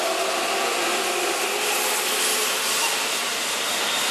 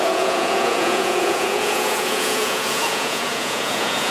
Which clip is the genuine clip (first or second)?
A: first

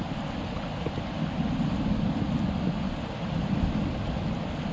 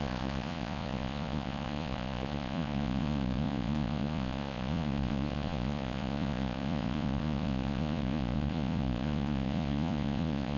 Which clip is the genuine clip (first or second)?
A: first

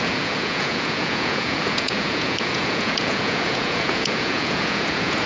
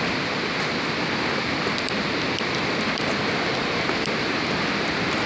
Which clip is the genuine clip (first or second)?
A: second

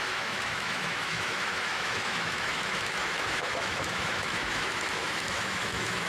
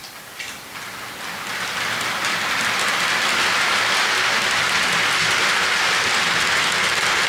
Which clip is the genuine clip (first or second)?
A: second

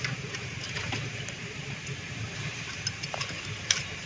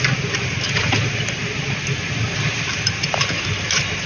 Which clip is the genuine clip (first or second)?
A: second